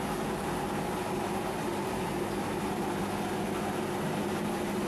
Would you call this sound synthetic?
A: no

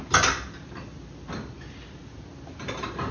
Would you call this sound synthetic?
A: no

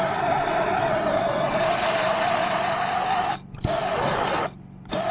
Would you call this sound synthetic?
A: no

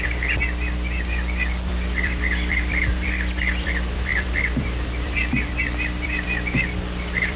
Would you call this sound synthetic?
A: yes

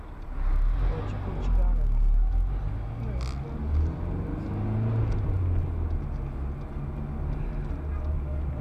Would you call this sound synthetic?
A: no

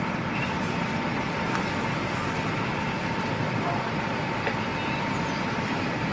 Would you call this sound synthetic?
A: yes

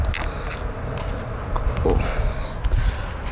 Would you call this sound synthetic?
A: no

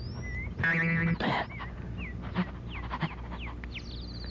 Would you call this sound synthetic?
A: no